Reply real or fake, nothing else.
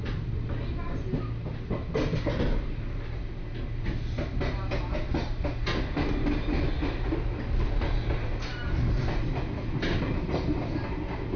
real